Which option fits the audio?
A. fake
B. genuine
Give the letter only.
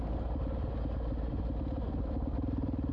B